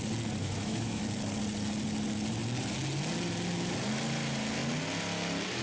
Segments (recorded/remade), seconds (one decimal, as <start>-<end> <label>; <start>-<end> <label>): 0.0-0.4 recorded; 0.4-1.0 remade; 1.0-5.6 recorded